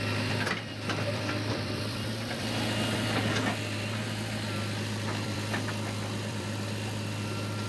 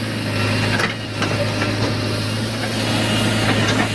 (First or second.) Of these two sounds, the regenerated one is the first